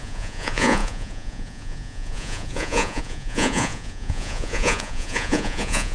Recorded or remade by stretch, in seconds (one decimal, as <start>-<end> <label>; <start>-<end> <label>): 0.0-5.9 remade